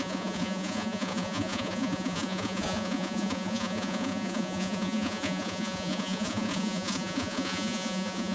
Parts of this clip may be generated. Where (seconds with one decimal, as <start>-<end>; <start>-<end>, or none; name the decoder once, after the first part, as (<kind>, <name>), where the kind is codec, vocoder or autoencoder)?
0.0-8.3 (vocoder, Vocos)